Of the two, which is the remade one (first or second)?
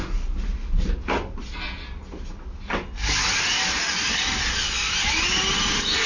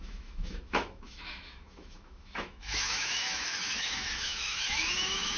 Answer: second